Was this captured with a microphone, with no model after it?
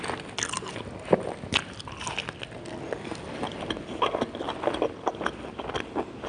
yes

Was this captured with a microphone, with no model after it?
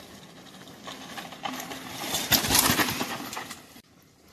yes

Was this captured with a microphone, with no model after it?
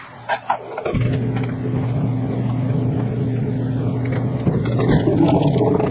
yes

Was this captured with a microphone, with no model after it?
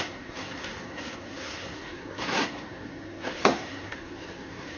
no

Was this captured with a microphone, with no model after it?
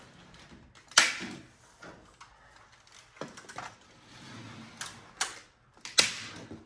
yes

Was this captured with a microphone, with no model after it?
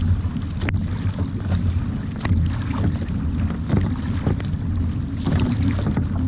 yes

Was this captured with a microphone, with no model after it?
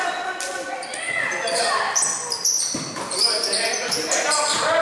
no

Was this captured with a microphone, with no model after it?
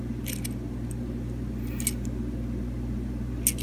yes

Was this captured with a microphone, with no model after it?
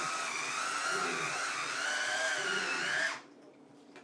yes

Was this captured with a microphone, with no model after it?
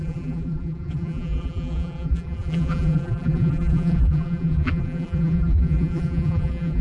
no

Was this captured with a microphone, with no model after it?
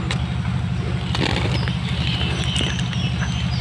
yes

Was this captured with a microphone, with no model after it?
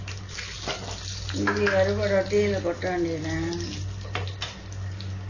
yes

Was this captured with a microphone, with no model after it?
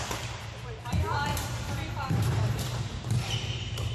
no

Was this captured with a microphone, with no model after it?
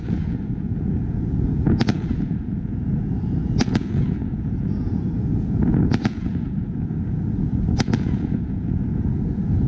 no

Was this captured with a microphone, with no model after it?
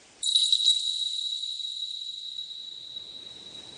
yes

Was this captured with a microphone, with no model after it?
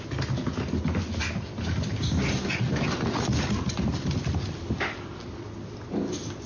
yes